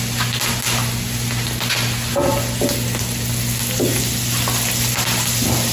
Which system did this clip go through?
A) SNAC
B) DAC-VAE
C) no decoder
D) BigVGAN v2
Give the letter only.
C